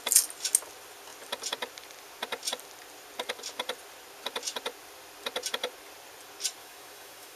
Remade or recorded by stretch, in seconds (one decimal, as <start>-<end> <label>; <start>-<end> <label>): 0.0-6.6 recorded; 6.6-7.4 remade